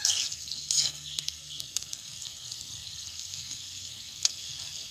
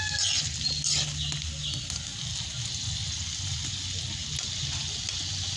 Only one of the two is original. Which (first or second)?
second